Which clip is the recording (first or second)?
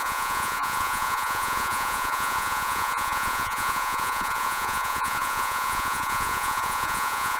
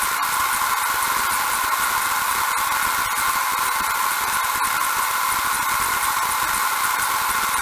second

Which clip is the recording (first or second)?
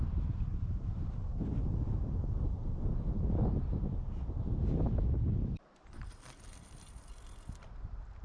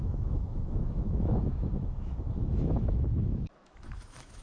first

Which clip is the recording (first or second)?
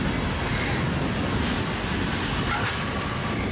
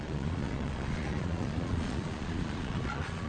first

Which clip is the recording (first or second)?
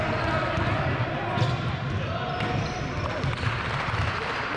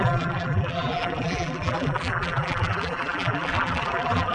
first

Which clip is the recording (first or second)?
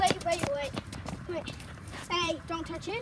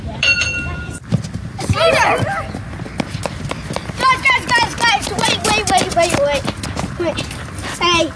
second